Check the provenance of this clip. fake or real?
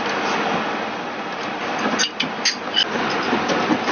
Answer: real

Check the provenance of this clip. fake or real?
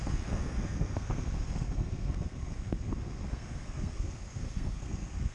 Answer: fake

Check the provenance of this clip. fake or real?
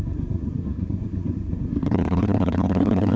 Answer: fake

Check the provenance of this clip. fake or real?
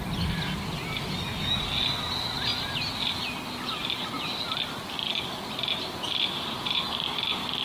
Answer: real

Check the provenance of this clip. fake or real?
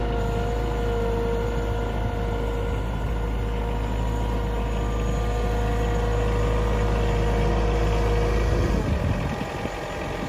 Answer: real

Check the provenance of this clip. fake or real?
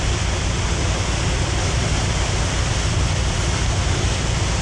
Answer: real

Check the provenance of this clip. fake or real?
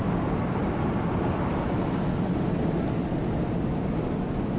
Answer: real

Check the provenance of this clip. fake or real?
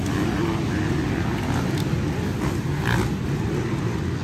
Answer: real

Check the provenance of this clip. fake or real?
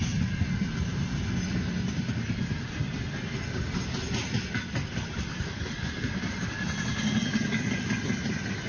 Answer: real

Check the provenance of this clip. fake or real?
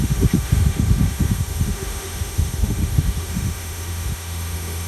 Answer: fake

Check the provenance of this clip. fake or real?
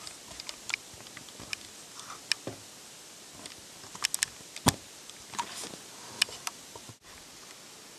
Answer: real